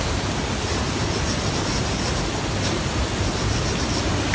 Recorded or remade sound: recorded